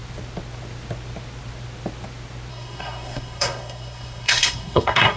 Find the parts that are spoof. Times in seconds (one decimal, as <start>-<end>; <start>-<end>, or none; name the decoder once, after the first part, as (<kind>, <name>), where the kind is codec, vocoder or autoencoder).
2.5-5.2 (codec, SNAC)